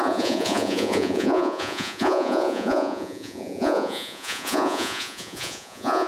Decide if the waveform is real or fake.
fake